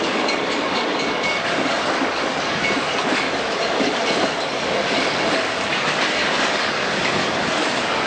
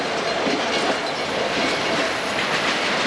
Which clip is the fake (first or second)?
first